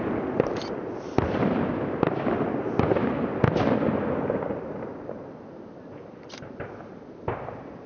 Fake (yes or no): no